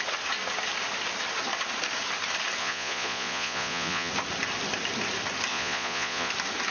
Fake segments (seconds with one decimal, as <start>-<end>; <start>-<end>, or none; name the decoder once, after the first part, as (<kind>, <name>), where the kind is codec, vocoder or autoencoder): 2.6-4.1 (vocoder, Vocos); 5.5-6.3